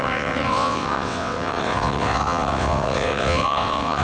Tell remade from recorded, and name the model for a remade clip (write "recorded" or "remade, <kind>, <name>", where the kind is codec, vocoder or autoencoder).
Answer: remade, vocoder, WaveNeXt